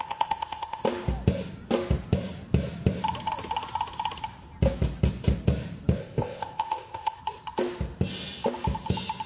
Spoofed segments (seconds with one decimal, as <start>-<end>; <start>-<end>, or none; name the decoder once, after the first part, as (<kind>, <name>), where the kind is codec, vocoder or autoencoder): 0.0-0.8 (codec, ZipCodec); 6.0-7.2